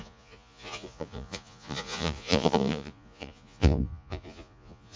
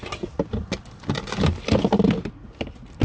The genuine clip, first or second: second